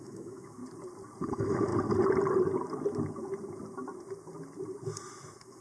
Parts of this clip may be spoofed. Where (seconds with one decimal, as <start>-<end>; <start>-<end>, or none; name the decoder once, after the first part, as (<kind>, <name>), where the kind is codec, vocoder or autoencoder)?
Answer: 0.0-0.6 (autoencoder, DAC-VAE); 1.2-1.7; 5.1-5.6